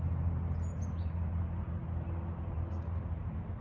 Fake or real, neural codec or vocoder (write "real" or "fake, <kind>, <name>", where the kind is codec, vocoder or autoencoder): real